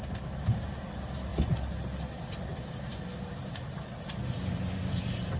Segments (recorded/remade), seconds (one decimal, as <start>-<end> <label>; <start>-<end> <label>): 0.0-5.4 recorded